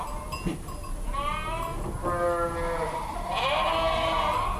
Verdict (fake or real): real